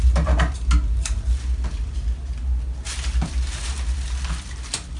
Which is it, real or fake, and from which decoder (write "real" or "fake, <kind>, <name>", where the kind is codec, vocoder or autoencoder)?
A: real